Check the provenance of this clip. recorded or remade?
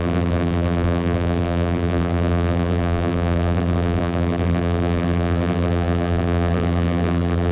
remade